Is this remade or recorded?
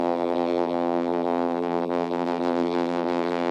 remade